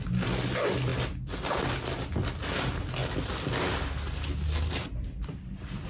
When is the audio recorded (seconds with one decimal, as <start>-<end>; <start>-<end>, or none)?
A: 0.0-5.9